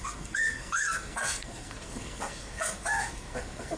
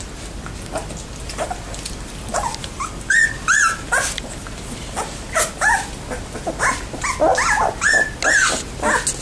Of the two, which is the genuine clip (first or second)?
second